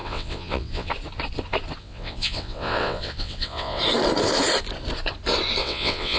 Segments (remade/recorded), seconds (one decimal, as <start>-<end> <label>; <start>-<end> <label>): 0.0-0.9 remade; 0.9-1.8 recorded; 1.8-3.8 remade; 3.8-5.6 recorded; 5.6-6.2 remade